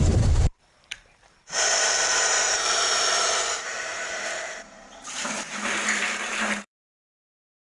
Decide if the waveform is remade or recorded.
remade